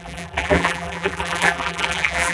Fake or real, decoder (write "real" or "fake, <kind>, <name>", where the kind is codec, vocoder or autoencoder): fake, vocoder, BigVGAN v2